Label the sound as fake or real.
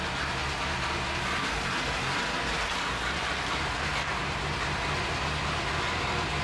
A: real